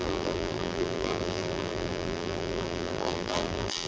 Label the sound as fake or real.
fake